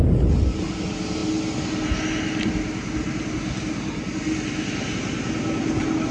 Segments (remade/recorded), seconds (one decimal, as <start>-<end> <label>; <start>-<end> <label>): 0.0-6.1 recorded